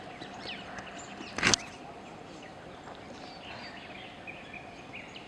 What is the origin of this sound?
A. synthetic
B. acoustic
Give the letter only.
B